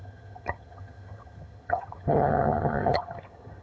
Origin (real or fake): fake